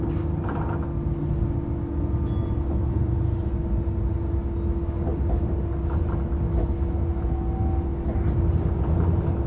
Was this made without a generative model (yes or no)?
yes